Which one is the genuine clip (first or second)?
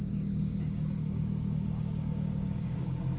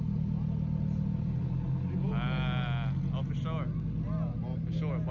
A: second